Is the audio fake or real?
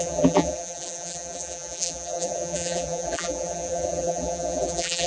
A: fake